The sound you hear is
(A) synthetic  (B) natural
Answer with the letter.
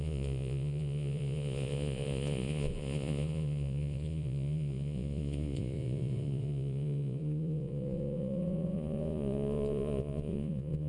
A